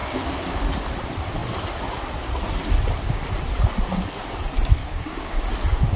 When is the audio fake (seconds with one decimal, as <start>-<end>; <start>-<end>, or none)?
0.0-0.6; 4.8-5.4

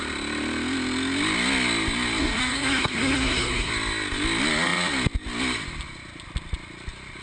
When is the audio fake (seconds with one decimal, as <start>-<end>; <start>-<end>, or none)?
2.2-3.7

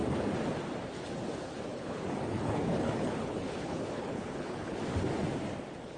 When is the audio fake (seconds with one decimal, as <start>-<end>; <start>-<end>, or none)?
1.7-4.8

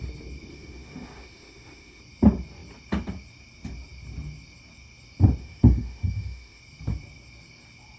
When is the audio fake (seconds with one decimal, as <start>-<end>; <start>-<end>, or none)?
0.5-2.0; 5.4-6.6

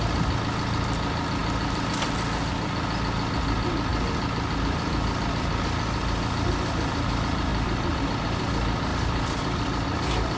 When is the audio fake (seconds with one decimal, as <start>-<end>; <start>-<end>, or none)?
7.5-8.0; 8.9-10.4